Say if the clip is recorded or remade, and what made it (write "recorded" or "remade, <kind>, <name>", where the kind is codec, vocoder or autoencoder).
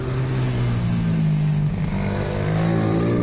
recorded